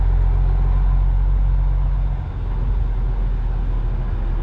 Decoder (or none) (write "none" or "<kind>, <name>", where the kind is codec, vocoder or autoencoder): none